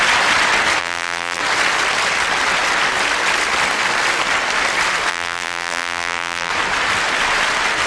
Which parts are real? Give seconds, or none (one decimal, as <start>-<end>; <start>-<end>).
0.0-0.8; 1.4-5.1; 6.5-7.9